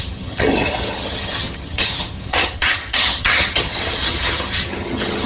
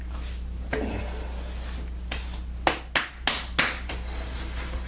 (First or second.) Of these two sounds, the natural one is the second